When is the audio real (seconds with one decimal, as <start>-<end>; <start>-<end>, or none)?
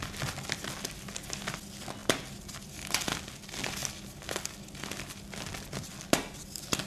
0.0-6.9